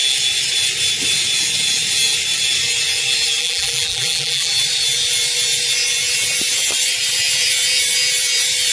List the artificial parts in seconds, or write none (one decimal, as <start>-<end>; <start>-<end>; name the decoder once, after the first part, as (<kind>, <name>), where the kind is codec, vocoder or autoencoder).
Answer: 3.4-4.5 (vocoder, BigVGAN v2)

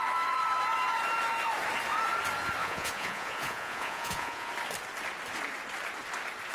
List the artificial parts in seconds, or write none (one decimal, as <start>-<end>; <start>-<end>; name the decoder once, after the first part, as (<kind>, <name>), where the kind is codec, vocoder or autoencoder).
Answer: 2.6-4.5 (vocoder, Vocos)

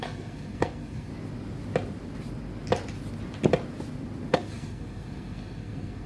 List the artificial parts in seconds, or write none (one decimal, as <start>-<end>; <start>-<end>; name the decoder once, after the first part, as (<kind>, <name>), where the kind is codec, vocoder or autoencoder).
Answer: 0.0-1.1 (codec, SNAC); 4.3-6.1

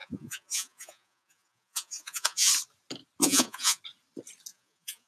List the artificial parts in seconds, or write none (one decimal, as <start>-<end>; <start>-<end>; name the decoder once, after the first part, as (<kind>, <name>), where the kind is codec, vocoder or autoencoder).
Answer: 0.0-2.5 (vocoder, Vocos); 3.2-3.8; 4.5-5.1

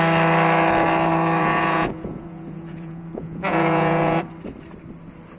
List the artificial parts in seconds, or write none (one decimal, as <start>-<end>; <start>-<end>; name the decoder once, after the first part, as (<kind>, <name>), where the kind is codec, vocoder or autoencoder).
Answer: 1.4-4.2 (vocoder, Vocos)